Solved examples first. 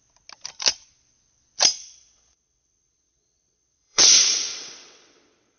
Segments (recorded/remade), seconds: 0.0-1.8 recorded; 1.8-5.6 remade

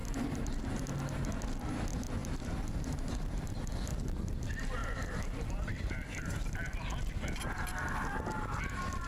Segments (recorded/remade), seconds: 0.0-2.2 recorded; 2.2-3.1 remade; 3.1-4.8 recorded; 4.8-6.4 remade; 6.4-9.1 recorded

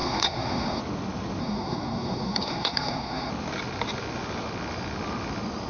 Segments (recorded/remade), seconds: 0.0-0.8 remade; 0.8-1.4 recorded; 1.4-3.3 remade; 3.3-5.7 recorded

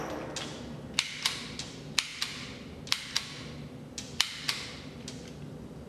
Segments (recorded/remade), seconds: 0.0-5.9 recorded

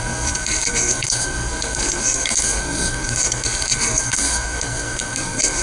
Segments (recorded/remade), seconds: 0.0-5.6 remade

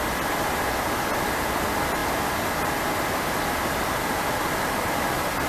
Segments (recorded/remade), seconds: 0.0-5.5 recorded